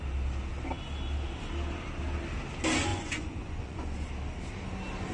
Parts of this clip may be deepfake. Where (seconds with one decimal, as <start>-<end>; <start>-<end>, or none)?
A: 2.9-4.1